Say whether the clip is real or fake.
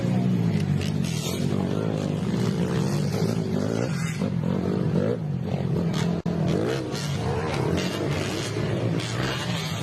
real